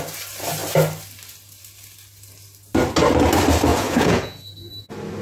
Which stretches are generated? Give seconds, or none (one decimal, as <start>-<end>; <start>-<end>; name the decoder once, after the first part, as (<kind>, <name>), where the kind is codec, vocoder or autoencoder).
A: 3.7-4.7 (vocoder, Vocos)